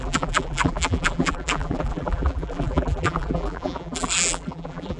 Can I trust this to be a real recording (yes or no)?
no